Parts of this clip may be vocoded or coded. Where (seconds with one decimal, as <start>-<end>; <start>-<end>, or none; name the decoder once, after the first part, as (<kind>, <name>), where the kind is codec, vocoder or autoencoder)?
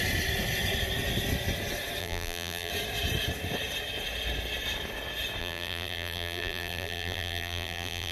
2.0-2.7 (vocoder, BigVGAN v2); 5.4-8.1